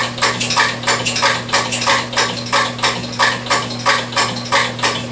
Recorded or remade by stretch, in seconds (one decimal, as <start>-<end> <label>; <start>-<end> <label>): 0.0-5.1 recorded

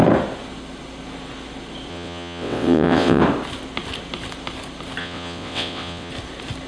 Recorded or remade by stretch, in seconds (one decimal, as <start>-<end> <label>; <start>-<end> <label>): 0.0-1.9 recorded; 1.9-3.2 remade; 3.2-5.0 recorded; 5.0-6.1 remade; 6.1-6.7 recorded

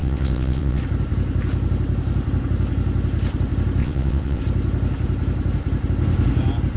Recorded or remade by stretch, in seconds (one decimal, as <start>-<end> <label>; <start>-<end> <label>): 0.0-0.8 remade; 0.8-3.8 recorded; 3.8-4.4 remade; 4.4-6.8 recorded

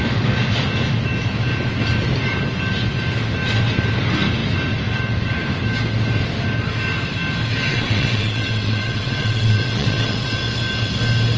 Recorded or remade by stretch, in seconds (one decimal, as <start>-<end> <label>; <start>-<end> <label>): 0.0-7.7 recorded; 7.7-10.4 remade; 10.4-11.4 recorded

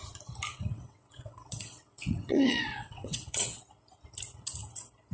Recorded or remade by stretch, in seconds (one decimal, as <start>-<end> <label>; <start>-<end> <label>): 0.0-0.5 recorded; 0.5-3.6 remade; 3.6-5.1 recorded

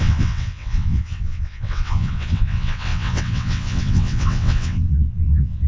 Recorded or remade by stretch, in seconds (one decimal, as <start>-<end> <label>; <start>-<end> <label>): 0.0-5.7 remade

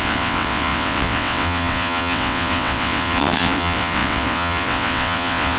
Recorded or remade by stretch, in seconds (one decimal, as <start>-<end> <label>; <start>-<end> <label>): 0.0-5.6 remade